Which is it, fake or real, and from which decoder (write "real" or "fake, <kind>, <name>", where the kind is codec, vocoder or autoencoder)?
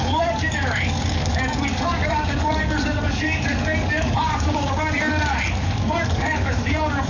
fake, codec, DAC